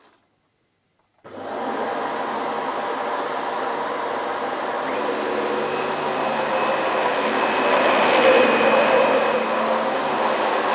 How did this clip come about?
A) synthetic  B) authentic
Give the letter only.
B